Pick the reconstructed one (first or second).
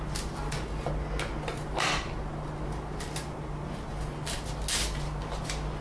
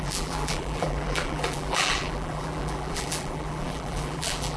second